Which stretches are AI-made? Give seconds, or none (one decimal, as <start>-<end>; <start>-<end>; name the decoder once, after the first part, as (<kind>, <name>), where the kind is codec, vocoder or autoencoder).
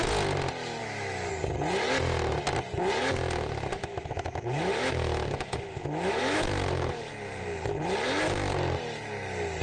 0.8-1.3 (autoencoder, DAC-VAE); 3.7-7.0